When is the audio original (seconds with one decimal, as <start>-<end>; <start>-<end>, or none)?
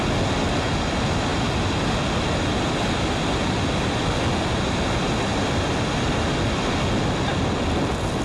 0.0-8.2